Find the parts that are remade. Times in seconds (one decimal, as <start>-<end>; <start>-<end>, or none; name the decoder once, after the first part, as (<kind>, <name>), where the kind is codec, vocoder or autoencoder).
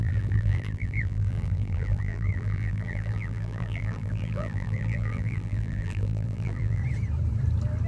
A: 0.0-6.8 (vocoder, BigVGAN v2)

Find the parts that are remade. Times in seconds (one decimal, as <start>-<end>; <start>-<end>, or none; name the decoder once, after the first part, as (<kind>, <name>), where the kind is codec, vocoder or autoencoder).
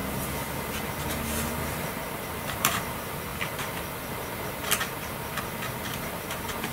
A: 1.0-3.3 (vocoder, BigVGAN v2); 5.9-6.7